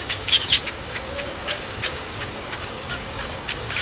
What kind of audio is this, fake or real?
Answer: fake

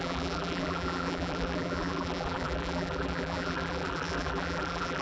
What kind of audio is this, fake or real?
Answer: fake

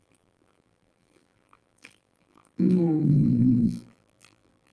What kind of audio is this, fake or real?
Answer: fake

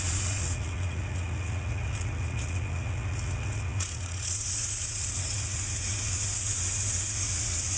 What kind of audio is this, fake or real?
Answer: fake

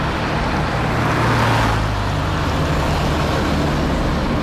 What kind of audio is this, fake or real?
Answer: real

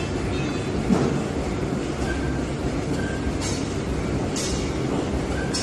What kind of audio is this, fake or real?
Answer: real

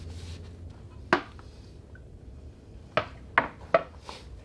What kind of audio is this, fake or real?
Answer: real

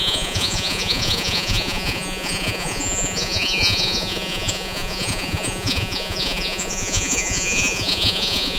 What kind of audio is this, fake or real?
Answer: fake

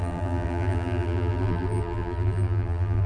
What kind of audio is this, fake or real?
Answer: fake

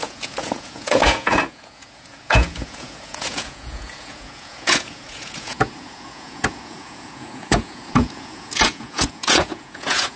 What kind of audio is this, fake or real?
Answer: fake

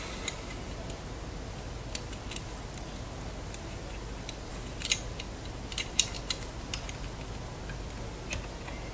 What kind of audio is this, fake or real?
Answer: real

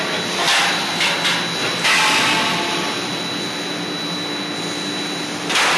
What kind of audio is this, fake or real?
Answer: real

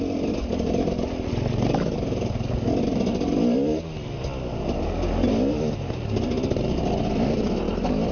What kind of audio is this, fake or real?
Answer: real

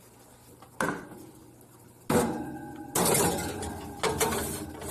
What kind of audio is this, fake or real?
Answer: real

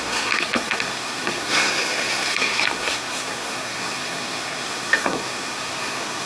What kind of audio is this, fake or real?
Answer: fake